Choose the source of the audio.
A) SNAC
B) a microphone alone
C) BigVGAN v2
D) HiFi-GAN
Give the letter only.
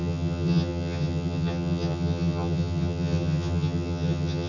D